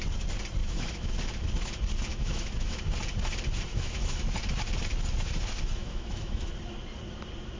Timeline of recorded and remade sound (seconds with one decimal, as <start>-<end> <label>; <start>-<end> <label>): 0.0-0.6 recorded; 0.6-1.1 remade; 1.1-2.1 recorded; 2.1-2.8 remade; 2.8-3.7 recorded; 3.7-4.2 remade; 4.2-5.8 recorded; 5.8-6.5 remade; 6.5-7.6 recorded